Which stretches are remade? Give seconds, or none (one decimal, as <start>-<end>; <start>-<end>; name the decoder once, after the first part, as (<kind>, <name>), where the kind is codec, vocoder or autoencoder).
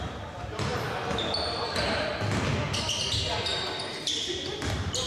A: 0.0-2.1 (vocoder, BigVGAN v2); 3.9-5.1